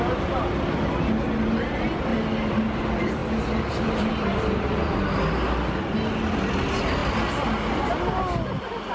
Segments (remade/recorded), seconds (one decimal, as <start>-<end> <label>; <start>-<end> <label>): 0.0-8.9 recorded